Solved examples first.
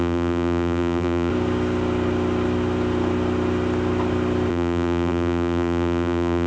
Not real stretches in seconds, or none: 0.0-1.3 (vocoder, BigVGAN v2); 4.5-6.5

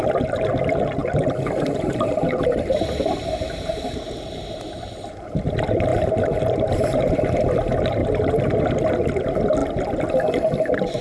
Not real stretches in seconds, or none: 1.0-4.9 (vocoder, BigVGAN v2); 5.9-7.1; 8.0-8.7

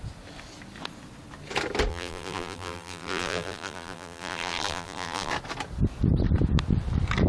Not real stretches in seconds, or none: 1.9-5.3 (vocoder, BigVGAN v2)